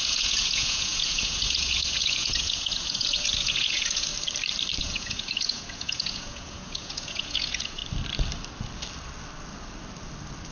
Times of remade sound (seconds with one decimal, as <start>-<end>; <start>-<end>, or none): 0.0-4.1; 4.8-7.8